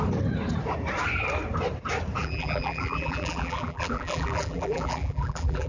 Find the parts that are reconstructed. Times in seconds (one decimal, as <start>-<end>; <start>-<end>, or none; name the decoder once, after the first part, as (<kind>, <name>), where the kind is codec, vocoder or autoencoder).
2.2-5.7 (vocoder, BigVGAN v2)